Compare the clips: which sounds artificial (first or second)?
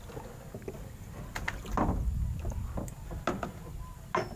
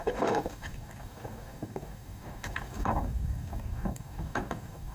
second